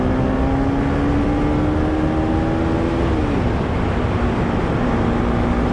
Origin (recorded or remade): recorded